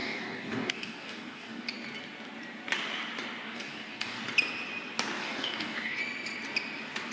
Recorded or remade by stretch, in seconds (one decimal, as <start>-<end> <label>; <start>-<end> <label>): 0.0-1.7 remade; 1.7-3.4 recorded; 3.4-4.2 remade; 4.2-5.2 recorded; 5.2-6.0 remade; 6.0-7.1 recorded